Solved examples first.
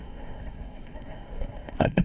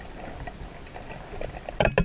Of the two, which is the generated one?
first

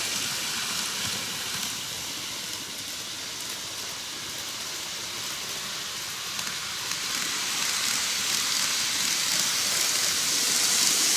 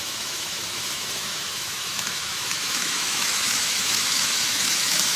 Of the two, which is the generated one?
second